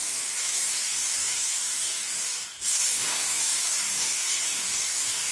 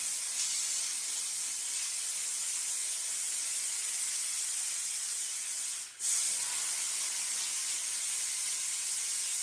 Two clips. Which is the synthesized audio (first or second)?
first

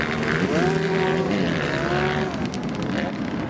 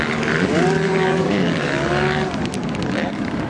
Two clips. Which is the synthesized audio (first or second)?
second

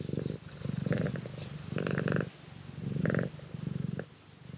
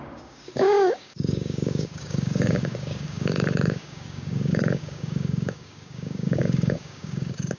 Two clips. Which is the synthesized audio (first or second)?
second